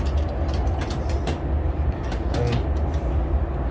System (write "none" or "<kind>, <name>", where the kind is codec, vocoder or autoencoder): none